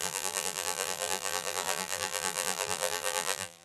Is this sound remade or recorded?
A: remade